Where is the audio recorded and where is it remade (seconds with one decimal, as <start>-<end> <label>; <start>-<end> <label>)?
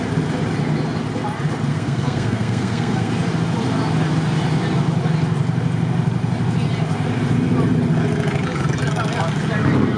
0.0-1.7 recorded; 1.7-3.1 remade; 3.1-10.0 recorded